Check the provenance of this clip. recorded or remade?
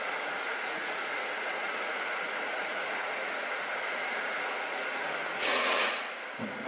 remade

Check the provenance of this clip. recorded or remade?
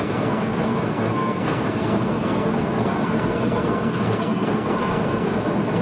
remade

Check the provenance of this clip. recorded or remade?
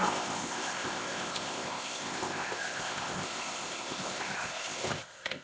remade